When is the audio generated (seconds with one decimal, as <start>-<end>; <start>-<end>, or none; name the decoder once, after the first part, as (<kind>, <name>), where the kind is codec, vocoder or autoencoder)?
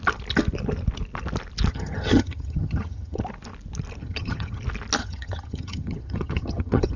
1.7-3.2 (vocoder, HiFi-GAN); 4.0-4.6; 5.0-7.0